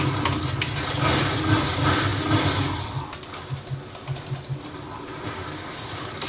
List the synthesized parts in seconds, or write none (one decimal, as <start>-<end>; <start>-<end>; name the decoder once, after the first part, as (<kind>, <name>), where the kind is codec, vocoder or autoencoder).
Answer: none